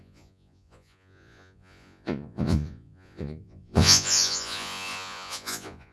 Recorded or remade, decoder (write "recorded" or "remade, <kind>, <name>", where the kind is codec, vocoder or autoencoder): remade, vocoder, Vocos